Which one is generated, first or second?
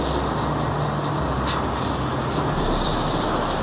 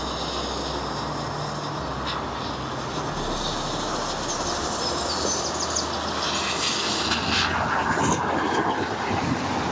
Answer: first